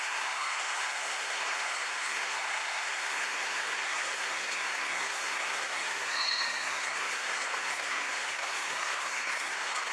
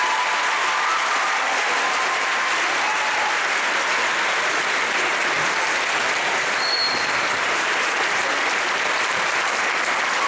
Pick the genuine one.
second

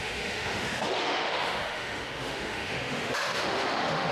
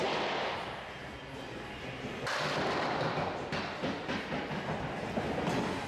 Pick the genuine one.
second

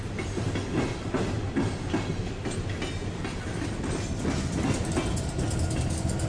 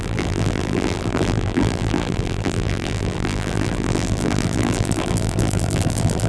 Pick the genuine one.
first